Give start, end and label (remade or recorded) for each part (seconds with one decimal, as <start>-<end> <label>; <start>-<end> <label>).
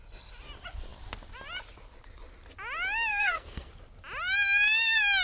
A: 0.0-3.1 recorded; 3.1-3.7 remade; 3.7-5.2 recorded